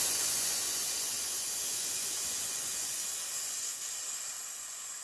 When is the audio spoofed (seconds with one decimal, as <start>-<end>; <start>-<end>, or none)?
0.0-3.7; 4.5-5.0